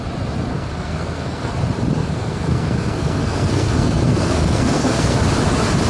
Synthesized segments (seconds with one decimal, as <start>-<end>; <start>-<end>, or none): 0.5-1.5; 2.0-5.2